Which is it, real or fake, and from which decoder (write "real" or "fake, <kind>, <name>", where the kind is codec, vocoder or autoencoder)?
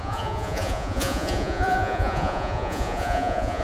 fake, vocoder, Vocos